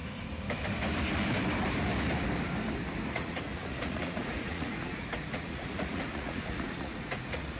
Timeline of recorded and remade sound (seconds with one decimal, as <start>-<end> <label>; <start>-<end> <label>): 0.0-3.1 recorded; 3.1-7.6 remade